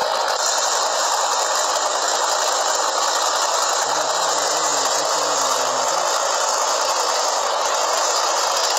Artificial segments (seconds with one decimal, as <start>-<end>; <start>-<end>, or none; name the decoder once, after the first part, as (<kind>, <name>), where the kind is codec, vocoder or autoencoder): 0.0-1.7 (vocoder, BigVGAN v2)